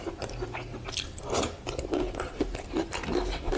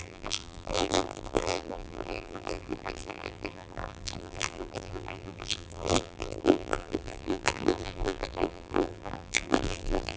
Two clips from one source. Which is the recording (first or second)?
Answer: first